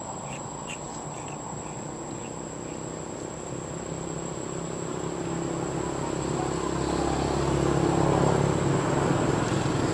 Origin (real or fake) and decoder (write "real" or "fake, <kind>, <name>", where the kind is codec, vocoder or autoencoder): real